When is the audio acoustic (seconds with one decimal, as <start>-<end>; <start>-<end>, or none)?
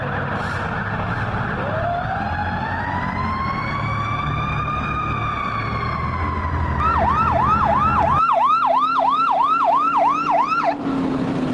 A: 0.0-11.5